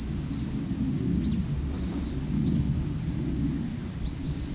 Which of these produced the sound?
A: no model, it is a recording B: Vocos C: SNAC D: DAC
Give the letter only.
A